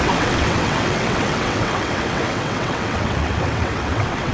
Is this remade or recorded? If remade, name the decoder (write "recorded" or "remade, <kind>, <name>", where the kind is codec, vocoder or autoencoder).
remade, vocoder, WaveNeXt